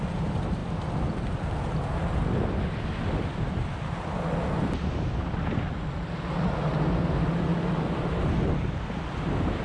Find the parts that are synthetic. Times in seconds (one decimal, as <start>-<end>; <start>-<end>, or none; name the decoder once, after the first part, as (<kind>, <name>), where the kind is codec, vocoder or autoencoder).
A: none